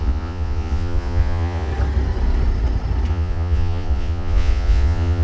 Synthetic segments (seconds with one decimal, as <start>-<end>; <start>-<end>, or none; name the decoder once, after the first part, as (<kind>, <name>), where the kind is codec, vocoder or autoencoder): 0.0-1.7 (vocoder, Vocos); 3.1-5.2

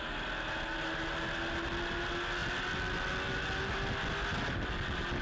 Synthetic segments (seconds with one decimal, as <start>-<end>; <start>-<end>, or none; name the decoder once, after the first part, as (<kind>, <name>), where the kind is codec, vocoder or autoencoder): none